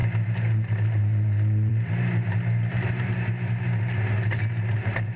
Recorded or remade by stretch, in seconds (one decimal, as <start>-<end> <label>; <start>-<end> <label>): 0.0-1.7 recorded; 1.7-3.1 remade; 3.1-5.2 recorded